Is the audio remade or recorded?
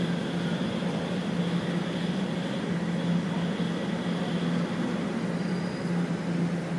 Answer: recorded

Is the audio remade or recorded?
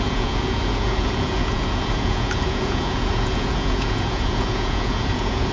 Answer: remade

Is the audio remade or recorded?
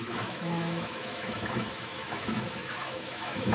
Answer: remade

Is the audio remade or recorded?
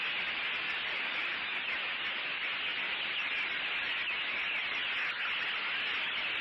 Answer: recorded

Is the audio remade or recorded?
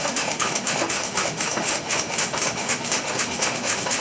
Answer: remade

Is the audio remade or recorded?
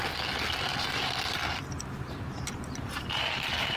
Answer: recorded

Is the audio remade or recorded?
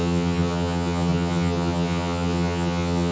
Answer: remade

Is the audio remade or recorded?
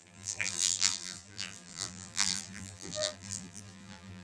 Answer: remade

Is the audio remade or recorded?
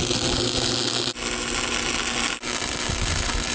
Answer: recorded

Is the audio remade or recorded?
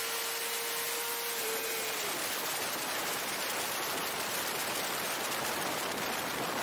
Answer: recorded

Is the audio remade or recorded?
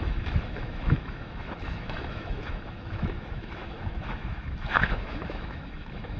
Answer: remade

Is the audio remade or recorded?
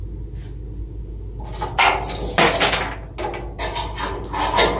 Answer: recorded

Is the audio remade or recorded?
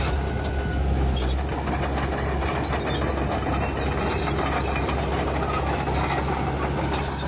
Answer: recorded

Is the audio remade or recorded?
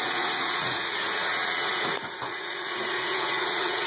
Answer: remade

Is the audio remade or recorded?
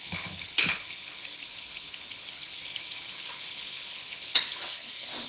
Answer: remade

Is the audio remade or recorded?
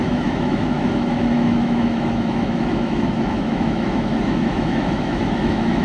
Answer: remade